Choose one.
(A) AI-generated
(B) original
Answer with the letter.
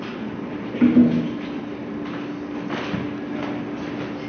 B